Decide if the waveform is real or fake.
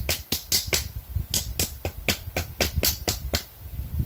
real